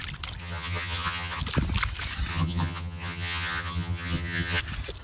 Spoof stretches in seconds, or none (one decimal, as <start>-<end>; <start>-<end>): 0.4-1.4; 2.3-4.6